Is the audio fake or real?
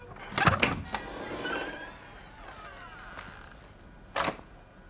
real